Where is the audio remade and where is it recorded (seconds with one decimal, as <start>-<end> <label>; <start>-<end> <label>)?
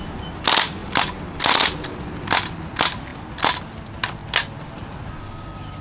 0.0-5.8 recorded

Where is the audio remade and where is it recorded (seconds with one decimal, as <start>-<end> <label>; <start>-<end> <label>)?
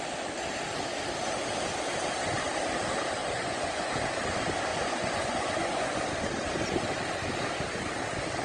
0.0-3.2 recorded; 3.2-3.9 remade; 3.9-4.7 recorded; 4.7-6.0 remade; 6.0-8.4 recorded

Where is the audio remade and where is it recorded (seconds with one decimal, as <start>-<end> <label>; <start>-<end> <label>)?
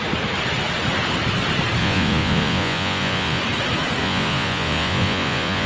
0.0-1.8 recorded; 1.8-3.4 remade; 3.4-4.0 recorded; 4.0-5.7 remade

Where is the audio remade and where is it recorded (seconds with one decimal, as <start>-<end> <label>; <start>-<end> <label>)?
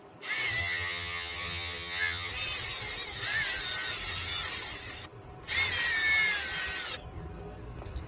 0.0-0.6 recorded; 0.6-2.3 remade; 2.3-8.1 recorded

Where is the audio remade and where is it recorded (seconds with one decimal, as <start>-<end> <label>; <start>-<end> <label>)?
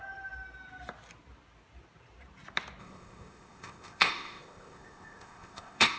0.0-2.8 recorded; 2.8-6.0 remade